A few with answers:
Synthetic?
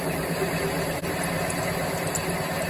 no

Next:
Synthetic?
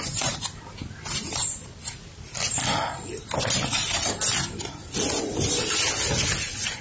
no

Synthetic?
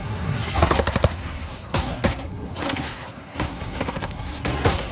yes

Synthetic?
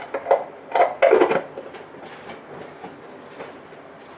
no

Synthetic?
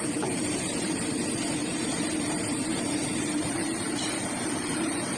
yes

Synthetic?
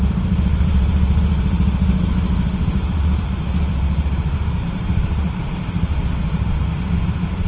yes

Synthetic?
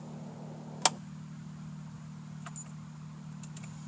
no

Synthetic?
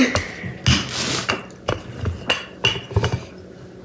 no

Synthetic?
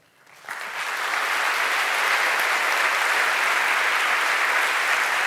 no